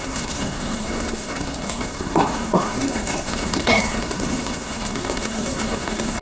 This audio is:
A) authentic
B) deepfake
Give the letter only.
B